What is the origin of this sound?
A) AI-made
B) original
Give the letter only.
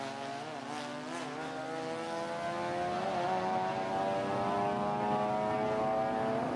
B